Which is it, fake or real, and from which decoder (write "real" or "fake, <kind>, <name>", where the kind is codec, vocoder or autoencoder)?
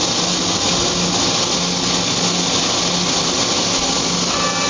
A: real